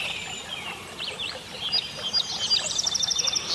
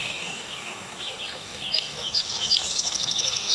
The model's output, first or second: second